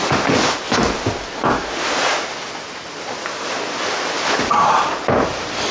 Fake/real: real